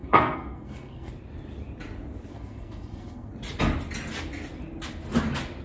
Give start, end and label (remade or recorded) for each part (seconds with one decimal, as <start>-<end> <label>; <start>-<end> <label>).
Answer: 0.0-1.1 remade; 1.1-2.3 recorded; 2.3-3.3 remade; 3.3-5.6 recorded